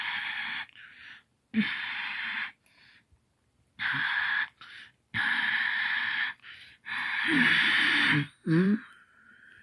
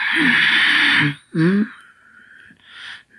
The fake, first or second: first